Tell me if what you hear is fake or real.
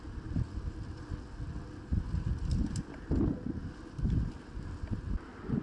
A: real